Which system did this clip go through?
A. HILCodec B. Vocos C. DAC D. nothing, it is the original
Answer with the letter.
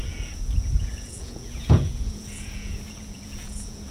B